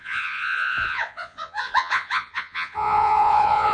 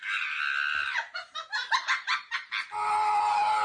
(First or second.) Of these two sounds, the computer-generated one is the first